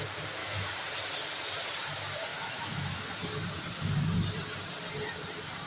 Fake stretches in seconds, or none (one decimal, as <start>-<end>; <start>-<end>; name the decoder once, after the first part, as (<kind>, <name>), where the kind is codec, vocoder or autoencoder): 0.4-0.9 (autoencoder, DAC-VAE); 2.3-3.1